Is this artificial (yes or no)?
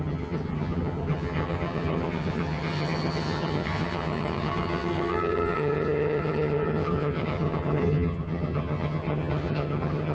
yes